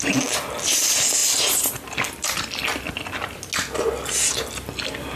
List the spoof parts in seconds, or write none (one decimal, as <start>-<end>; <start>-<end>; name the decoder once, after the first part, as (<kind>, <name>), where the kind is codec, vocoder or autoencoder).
none